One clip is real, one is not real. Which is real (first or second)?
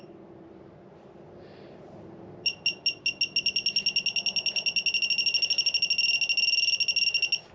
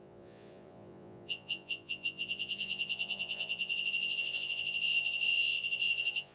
first